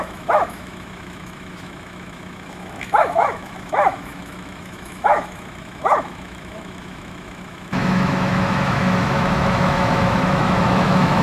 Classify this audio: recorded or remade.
remade